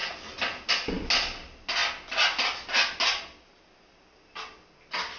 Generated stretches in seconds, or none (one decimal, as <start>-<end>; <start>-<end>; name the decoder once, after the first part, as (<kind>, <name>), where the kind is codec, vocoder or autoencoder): none